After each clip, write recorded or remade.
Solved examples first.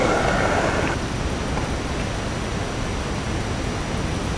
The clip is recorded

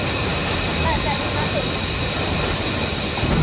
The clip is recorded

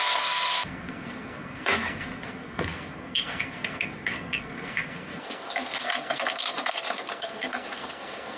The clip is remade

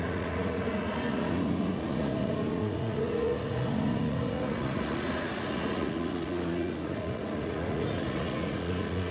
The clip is remade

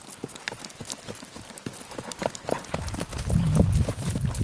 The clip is recorded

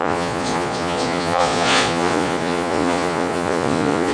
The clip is remade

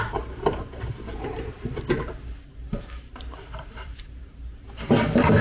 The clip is remade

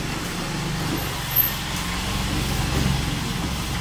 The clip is recorded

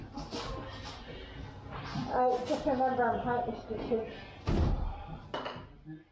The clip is recorded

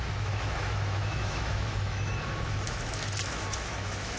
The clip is remade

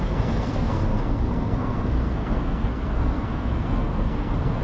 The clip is remade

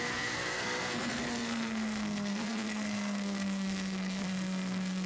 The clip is remade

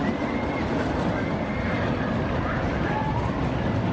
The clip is recorded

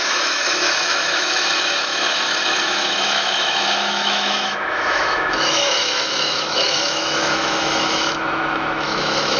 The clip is remade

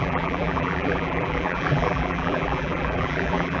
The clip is remade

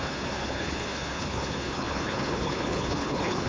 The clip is remade